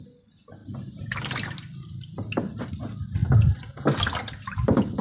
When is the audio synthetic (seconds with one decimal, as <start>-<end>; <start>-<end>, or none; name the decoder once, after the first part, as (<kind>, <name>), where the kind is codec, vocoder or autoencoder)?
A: none